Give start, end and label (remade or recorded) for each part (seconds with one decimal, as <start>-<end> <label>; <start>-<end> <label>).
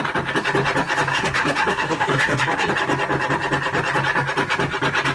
0.0-1.1 recorded; 1.1-2.7 remade; 2.7-5.1 recorded